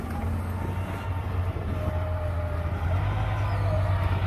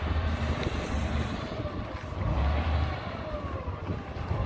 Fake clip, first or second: second